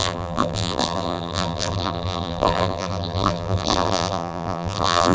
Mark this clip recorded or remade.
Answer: remade